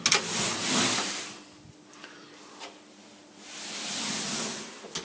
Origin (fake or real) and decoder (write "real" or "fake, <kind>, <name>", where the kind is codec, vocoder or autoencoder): real